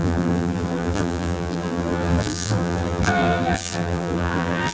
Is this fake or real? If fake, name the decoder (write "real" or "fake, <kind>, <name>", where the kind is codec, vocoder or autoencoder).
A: fake, vocoder, BigVGAN v2